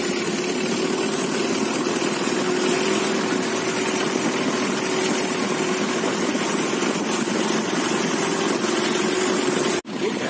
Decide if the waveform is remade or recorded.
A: recorded